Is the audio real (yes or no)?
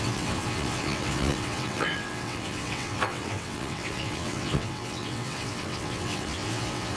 no